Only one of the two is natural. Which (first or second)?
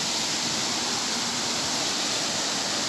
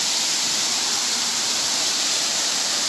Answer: first